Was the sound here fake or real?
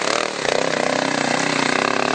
real